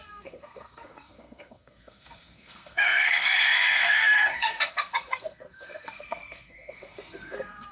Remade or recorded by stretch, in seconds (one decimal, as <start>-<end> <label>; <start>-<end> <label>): 0.0-7.7 remade